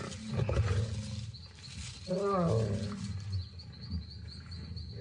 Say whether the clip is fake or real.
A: real